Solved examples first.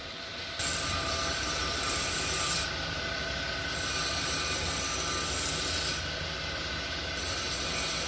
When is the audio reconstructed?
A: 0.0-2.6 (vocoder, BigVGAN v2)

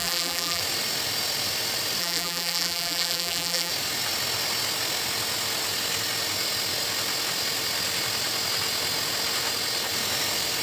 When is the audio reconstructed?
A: 0.0-0.6 (vocoder, BigVGAN v2); 2.0-3.7

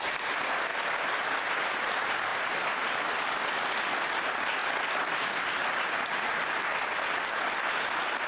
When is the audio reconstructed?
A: 0.7-1.3 (vocoder, BigVGAN v2); 2.3-3.4

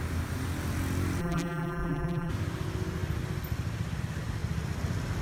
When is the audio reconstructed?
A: 1.2-2.3 (vocoder, BigVGAN v2)

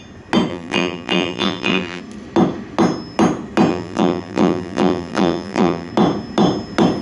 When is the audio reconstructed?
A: 0.5-2.0 (vocoder, BigVGAN v2); 3.7-5.9